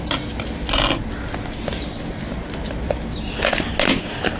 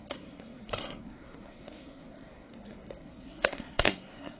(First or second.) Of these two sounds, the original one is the first